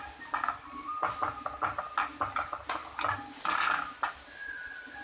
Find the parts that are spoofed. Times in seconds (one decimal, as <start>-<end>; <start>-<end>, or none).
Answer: none